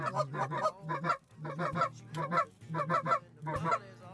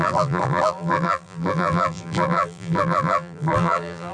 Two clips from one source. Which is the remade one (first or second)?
second